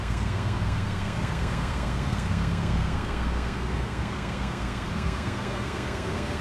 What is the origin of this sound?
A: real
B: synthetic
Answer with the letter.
B